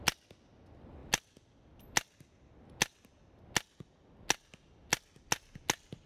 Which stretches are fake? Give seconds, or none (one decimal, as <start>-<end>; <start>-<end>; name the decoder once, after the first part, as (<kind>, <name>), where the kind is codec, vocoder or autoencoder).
none